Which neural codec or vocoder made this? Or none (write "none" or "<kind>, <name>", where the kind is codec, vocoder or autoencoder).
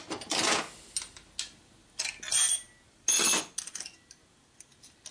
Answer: none